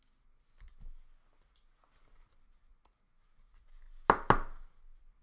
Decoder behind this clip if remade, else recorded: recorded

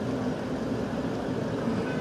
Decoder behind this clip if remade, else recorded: recorded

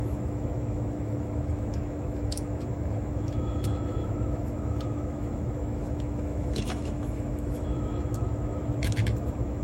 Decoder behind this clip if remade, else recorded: remade, autoencoder, DAC-VAE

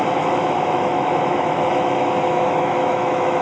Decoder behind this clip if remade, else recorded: remade, autoencoder, DAC-VAE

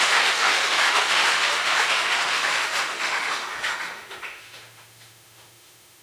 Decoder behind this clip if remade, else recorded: remade, autoencoder, DAC-VAE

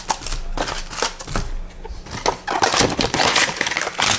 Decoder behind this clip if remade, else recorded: recorded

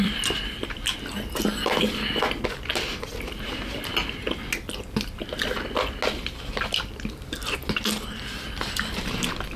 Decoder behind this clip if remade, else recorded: recorded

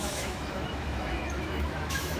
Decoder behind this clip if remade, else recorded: remade, autoencoder, DAC-VAE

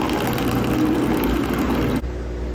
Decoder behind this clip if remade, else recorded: recorded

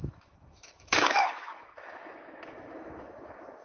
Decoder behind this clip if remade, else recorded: remade, autoencoder, DAC-VAE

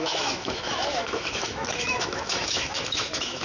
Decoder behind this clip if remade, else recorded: remade, autoencoder, DAC-VAE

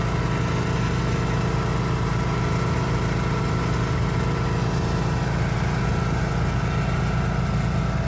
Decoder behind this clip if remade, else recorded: recorded